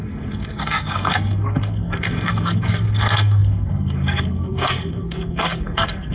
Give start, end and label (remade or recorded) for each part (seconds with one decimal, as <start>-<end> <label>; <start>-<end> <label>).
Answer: 0.0-6.1 remade